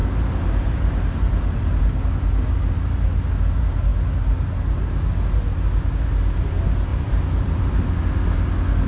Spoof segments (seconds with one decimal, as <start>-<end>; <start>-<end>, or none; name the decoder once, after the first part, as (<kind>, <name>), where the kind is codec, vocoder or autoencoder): 0.0-0.9 (vocoder, BigVGAN v2); 6.9-7.6